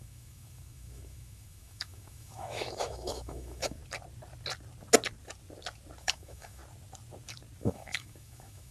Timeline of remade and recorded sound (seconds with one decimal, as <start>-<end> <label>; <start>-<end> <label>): 0.0-3.8 remade; 3.8-6.0 recorded; 6.0-6.6 remade; 6.6-7.6 recorded; 7.6-8.7 remade